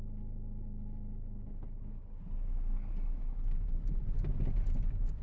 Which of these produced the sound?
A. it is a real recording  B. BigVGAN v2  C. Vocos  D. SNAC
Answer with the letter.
A